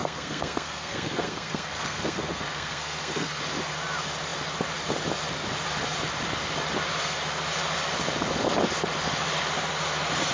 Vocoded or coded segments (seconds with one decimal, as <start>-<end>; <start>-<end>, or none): 0.0-3.4